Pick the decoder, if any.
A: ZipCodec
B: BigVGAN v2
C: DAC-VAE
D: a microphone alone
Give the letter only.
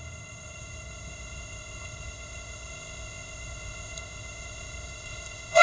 A